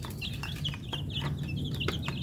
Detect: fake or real real